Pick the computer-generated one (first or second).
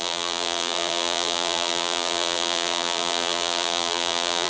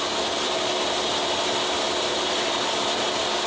first